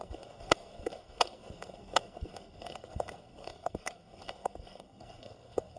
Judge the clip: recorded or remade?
remade